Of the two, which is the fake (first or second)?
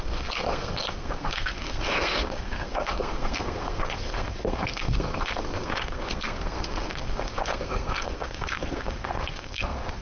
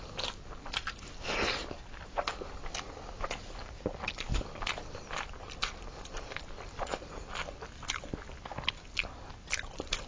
first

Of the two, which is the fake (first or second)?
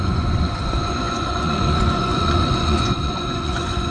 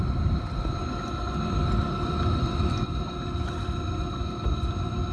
first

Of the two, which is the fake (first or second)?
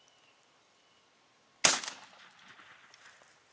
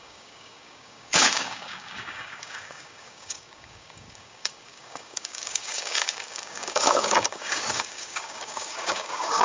second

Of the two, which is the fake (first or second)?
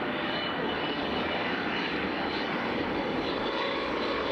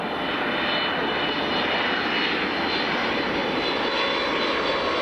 first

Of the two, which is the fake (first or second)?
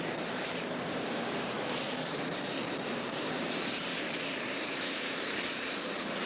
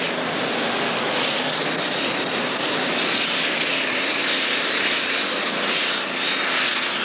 first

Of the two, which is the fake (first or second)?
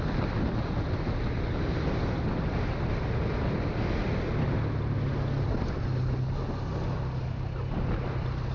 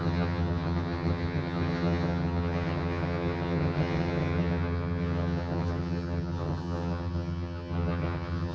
second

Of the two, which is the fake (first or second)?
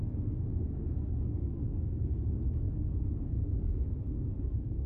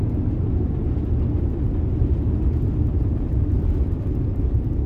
first